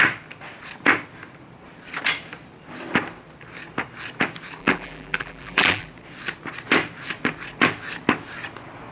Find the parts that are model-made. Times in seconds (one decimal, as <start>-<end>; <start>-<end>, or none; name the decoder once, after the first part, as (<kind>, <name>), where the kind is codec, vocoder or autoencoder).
4.6-5.9 (vocoder, BigVGAN v2)